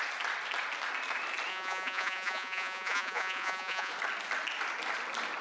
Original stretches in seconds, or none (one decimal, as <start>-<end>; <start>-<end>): 0.0-1.5; 3.9-5.4